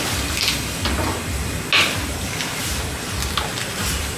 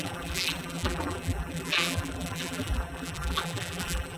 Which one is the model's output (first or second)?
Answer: second